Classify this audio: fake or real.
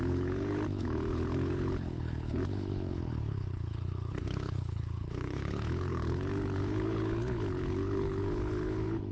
fake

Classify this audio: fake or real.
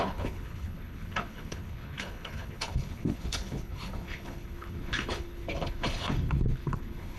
fake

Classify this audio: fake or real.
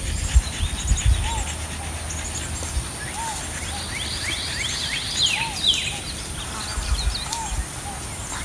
real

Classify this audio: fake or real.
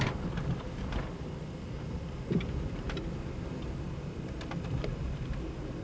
real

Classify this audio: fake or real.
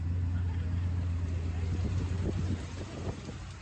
real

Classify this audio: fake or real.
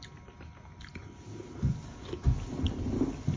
real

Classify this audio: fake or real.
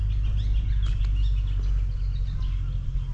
real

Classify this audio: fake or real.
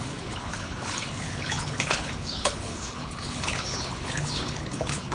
fake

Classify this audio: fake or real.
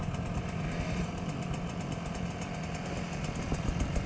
real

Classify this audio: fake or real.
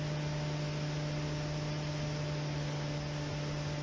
real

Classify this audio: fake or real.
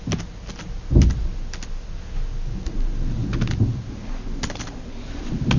real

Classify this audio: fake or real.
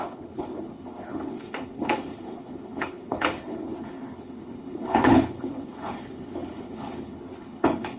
fake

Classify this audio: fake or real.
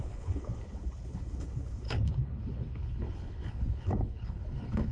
fake